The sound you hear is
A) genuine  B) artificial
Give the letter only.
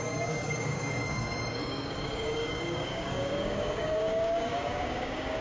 B